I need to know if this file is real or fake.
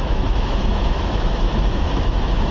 fake